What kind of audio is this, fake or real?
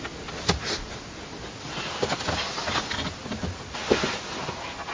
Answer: real